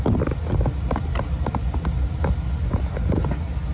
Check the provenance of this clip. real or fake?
real